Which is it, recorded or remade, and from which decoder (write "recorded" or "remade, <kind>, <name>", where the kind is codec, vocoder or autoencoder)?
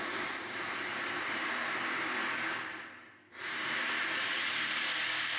remade, vocoder, BigVGAN v2